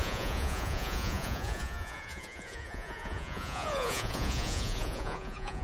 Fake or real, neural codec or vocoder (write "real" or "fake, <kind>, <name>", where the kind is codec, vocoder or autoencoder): fake, vocoder, Vocos